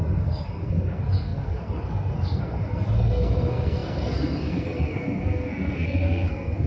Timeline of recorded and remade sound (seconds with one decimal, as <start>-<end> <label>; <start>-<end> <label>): 0.0-6.7 remade